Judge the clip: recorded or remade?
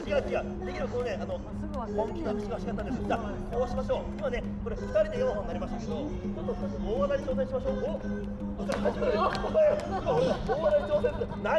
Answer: recorded